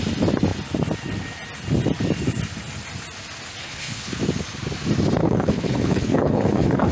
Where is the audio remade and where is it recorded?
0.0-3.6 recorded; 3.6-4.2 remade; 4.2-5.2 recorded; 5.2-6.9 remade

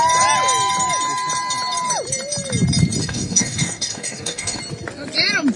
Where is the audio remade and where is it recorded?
0.0-3.0 recorded; 3.0-4.6 remade; 4.6-5.6 recorded